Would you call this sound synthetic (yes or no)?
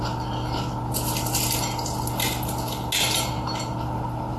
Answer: no